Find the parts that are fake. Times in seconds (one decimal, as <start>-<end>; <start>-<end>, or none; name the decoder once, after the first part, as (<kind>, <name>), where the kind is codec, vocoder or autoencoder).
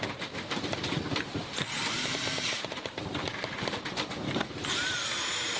0.0-5.6 (vocoder, BigVGAN v2)